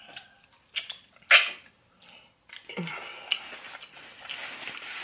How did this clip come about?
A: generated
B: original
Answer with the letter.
B